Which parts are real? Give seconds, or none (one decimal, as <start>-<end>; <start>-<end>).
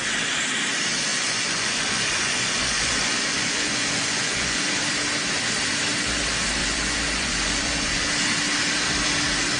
0.0-1.1; 4.7-6.6; 8.1-9.6